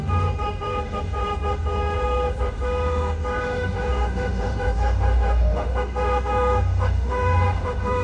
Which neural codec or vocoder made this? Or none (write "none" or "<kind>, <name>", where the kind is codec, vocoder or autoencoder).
autoencoder, DAC-VAE